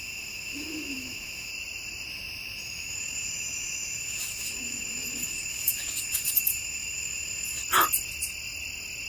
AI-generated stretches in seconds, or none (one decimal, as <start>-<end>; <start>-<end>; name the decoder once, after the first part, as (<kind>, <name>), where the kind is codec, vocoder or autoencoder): 0.0-1.5 (autoencoder, DAC-VAE); 2.1-7.6